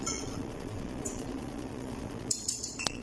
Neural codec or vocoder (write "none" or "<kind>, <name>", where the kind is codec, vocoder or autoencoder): vocoder, Vocos